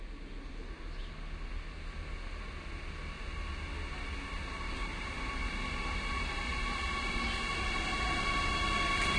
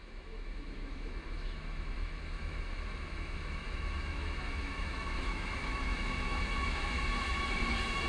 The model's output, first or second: second